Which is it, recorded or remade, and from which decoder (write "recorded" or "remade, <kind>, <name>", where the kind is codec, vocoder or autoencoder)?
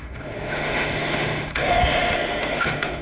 remade, autoencoder, DAC-VAE